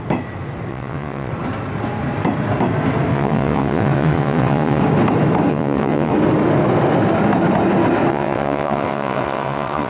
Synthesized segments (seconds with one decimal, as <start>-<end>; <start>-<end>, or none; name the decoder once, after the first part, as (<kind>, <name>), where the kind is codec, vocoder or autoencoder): 0.7-1.3 (vocoder, WaveNeXt); 3.1-4.8; 5.5-6.1; 8.1-9.9